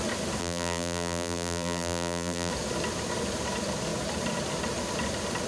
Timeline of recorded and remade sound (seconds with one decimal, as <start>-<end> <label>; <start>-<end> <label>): 0.0-0.4 recorded; 0.4-2.5 remade; 2.5-5.5 recorded